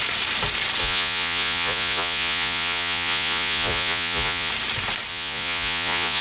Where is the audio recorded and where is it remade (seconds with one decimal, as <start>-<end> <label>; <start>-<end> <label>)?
0.0-0.8 recorded; 0.8-4.5 remade; 4.5-5.1 recorded; 5.1-6.2 remade

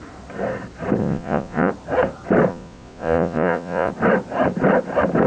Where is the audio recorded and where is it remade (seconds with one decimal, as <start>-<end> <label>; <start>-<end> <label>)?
0.0-1.0 recorded; 1.0-1.7 remade; 1.7-2.5 recorded; 2.5-3.9 remade; 3.9-5.3 recorded

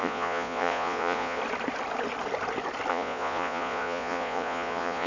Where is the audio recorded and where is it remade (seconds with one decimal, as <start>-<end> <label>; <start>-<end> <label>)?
0.0-1.4 remade; 1.4-2.9 recorded; 2.9-5.1 remade

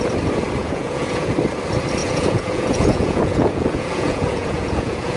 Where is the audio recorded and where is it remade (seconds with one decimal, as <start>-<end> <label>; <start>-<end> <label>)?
0.0-0.6 recorded; 0.6-1.3 remade; 1.3-2.0 recorded; 2.0-5.2 remade

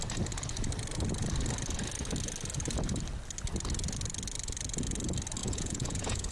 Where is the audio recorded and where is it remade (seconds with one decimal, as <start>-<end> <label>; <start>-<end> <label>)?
0.0-5.4 recorded; 5.4-6.3 remade